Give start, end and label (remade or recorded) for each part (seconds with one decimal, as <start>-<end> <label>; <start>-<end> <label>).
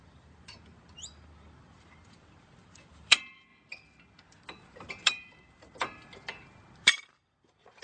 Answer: 0.0-3.5 remade; 3.5-4.9 recorded; 4.9-7.8 remade